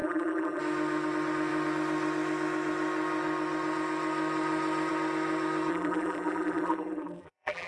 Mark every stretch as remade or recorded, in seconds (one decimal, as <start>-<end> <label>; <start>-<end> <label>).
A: 0.0-0.6 remade; 0.6-5.7 recorded; 5.7-7.7 remade